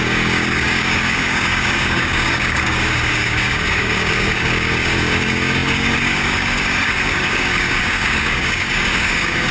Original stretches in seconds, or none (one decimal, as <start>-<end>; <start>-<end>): none